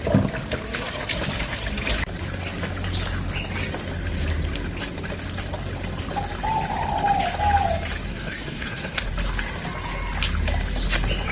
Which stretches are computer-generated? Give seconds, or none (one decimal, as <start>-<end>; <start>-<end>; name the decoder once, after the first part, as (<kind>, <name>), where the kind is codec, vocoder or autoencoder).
8.1-9.1 (codec, SNAC)